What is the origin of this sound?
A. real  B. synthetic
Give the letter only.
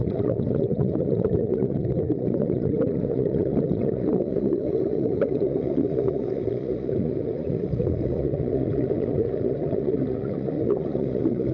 B